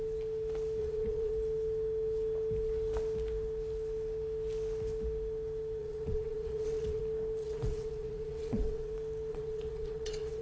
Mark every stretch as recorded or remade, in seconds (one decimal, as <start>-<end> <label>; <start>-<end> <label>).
0.0-0.8 recorded; 0.8-1.3 remade; 1.3-5.8 recorded; 5.8-7.0 remade; 7.0-7.4 recorded; 7.4-8.9 remade; 8.9-9.3 recorded; 9.3-10.4 remade